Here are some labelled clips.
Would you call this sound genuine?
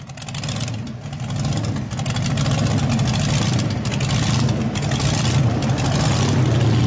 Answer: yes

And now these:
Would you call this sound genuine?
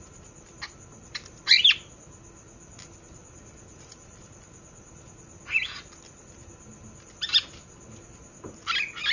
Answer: yes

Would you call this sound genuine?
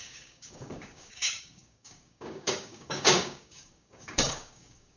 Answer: no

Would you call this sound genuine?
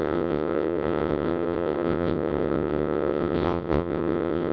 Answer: no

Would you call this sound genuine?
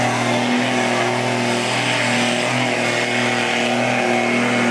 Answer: yes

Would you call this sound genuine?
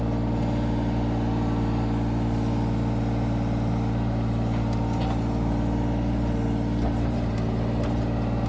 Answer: yes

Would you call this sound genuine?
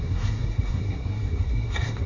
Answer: no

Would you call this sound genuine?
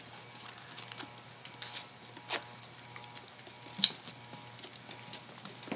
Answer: yes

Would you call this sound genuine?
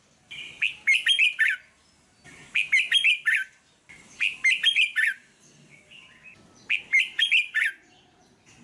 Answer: yes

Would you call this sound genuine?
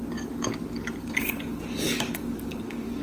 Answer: no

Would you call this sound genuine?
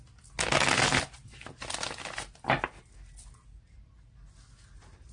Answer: yes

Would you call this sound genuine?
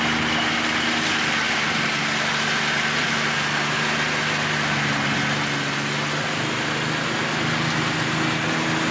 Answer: yes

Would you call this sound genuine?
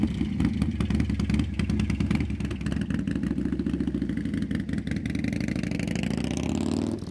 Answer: yes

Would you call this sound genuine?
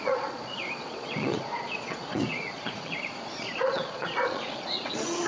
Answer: no